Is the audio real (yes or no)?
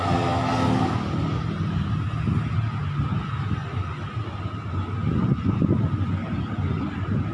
yes